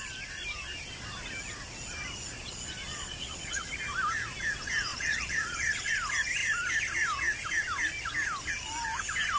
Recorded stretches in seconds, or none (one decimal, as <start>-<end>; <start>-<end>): 0.0-2.9; 3.7-4.9; 5.9-9.4